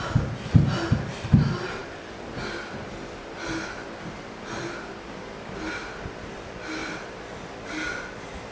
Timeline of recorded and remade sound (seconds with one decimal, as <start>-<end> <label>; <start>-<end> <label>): 0.0-8.5 recorded